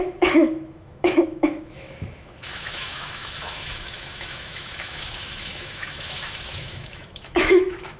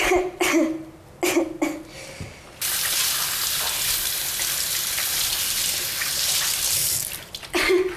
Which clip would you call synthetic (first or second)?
first